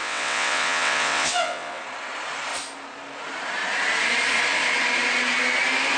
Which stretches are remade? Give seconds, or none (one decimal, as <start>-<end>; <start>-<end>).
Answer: 0.0-1.8